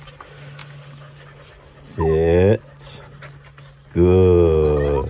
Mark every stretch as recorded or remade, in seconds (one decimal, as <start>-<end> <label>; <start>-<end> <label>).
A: 0.0-5.1 recorded